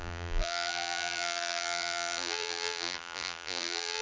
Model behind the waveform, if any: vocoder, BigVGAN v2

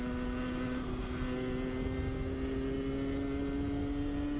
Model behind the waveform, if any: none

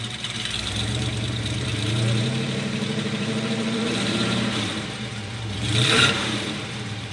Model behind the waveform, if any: vocoder, BigVGAN v2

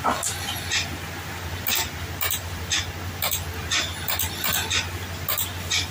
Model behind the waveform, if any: none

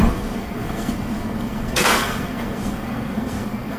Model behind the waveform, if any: codec, SNAC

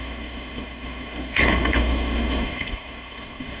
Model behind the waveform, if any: codec, SNAC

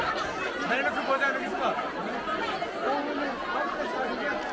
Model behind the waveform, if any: none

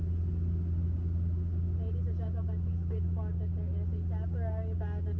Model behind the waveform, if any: none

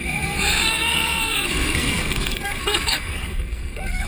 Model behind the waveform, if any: codec, SNAC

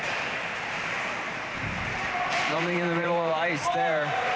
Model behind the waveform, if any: vocoder, BigVGAN v2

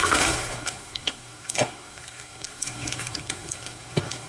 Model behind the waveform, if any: codec, SNAC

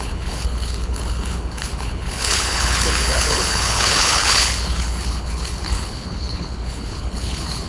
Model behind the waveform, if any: codec, HILCodec